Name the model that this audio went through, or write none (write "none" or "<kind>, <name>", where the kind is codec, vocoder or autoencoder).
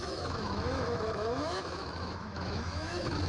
autoencoder, DAC-VAE